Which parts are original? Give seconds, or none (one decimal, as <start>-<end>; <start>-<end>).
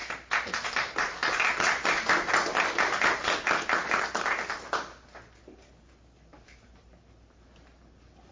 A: 0.0-8.3